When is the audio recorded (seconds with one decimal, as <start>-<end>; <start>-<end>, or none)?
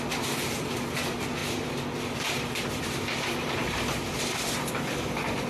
none